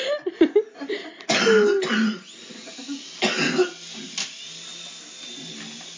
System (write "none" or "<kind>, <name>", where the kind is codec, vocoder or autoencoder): none